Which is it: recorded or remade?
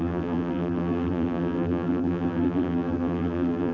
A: remade